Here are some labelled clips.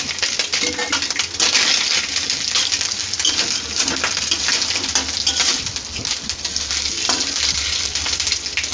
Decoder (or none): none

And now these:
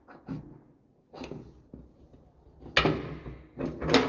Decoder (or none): none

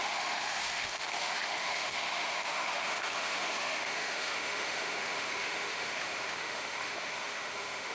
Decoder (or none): autoencoder, DAC-VAE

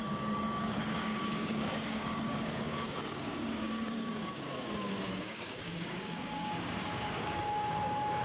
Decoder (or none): codec, DAC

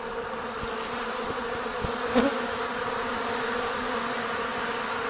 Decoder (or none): none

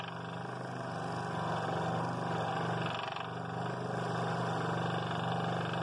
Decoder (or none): none